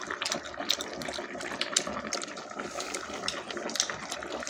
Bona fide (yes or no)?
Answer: yes